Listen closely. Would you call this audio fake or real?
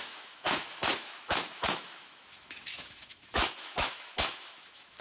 fake